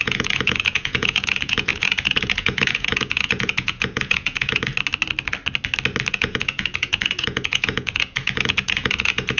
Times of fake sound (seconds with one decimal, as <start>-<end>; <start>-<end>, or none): 0.0-4.7; 6.1-9.4